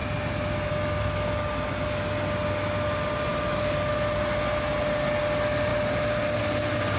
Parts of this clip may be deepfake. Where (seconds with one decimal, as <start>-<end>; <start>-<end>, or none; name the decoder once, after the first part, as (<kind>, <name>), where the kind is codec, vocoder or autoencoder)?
none